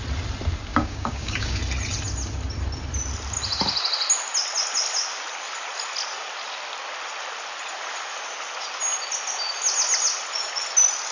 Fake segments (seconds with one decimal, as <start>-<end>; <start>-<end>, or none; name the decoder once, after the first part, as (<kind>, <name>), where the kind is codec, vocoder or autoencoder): 0.7-1.6 (codec, DAC)